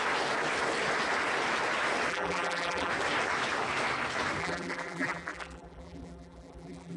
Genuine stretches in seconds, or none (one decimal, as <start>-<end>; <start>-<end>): 0.0-2.1; 2.9-4.4